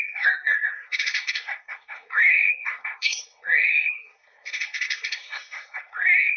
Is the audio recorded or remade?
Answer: remade